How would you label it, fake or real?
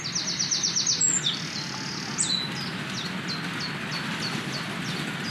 real